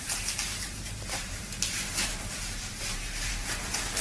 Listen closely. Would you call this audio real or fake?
fake